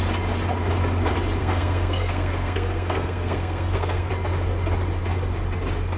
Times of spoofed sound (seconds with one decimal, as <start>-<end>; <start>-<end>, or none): 1.4-4.1